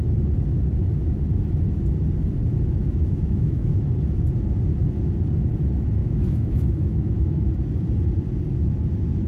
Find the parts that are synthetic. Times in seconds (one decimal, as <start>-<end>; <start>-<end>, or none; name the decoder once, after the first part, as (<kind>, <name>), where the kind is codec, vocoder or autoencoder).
2.8-3.8 (autoencoder, DAC-VAE); 6.0-7.5